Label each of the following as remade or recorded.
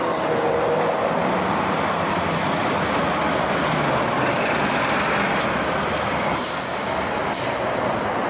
recorded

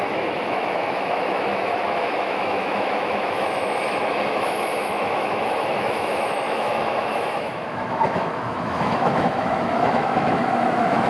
remade